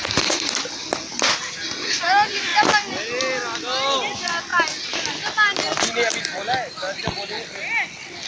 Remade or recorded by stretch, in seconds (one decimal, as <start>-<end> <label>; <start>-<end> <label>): 0.0-8.3 recorded